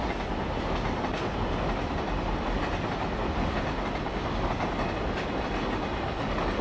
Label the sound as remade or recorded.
recorded